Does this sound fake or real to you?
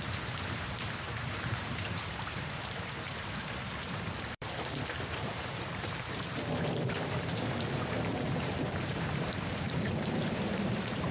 fake